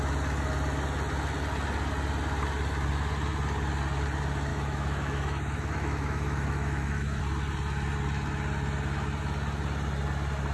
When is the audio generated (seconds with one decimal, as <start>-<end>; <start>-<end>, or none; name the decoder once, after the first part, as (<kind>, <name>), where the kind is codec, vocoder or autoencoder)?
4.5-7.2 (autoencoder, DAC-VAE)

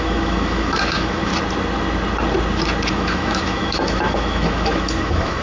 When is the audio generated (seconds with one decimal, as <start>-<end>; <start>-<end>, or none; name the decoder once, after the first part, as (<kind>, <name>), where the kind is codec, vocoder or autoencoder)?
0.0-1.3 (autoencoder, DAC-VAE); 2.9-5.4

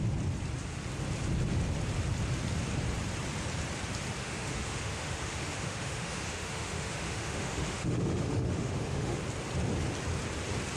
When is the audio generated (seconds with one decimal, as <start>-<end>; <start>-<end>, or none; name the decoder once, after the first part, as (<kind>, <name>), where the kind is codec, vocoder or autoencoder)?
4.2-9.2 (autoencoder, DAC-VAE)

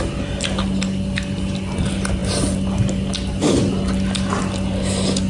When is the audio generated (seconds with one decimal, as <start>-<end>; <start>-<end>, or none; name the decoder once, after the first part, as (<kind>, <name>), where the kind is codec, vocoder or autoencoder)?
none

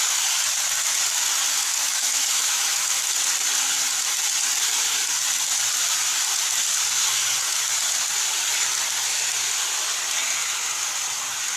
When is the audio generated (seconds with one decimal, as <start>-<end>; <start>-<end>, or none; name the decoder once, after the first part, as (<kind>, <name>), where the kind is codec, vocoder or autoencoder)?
1.6-3.1 (autoencoder, DAC-VAE)